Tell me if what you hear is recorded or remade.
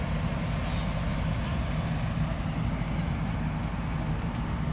recorded